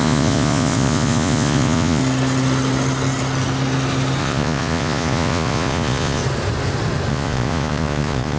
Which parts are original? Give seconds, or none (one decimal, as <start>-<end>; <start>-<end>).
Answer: 2.0-4.2; 6.2-7.1